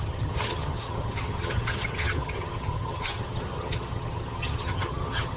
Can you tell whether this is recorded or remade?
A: remade